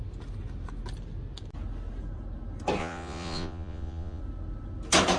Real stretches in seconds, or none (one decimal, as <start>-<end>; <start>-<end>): 0.0-2.8; 4.2-5.2